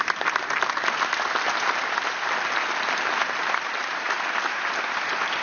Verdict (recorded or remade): recorded